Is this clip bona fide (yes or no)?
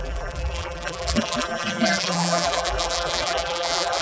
no